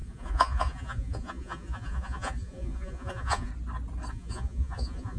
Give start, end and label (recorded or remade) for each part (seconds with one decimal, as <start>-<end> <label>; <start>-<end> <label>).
0.0-3.5 remade; 3.5-4.1 recorded; 4.1-5.2 remade